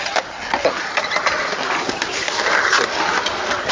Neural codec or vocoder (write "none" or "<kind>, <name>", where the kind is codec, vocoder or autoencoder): none